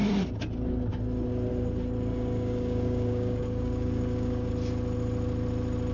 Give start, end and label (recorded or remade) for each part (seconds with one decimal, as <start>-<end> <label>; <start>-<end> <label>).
0.0-2.1 recorded; 2.1-4.5 remade; 4.5-5.9 recorded

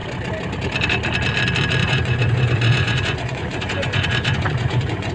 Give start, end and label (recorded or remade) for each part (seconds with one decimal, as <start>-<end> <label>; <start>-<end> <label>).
0.0-1.8 recorded; 1.8-5.1 remade